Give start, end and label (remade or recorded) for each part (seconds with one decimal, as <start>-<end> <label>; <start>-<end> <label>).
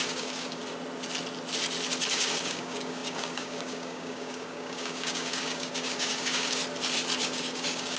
0.0-0.6 remade; 0.6-2.1 recorded; 2.1-6.6 remade; 6.6-7.2 recorded; 7.2-8.0 remade